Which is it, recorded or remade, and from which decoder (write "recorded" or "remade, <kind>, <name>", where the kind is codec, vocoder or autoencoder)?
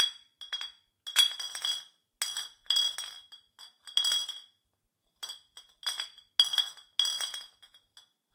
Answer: recorded